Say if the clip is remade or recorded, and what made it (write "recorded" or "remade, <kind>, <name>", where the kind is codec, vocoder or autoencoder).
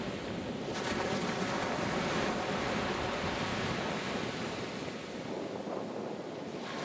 recorded